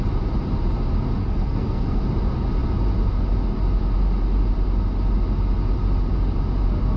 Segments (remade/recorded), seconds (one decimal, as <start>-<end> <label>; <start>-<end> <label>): 0.0-1.2 recorded; 1.2-2.0 remade; 2.0-7.0 recorded